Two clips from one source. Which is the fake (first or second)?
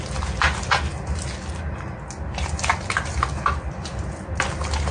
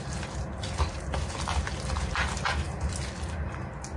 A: second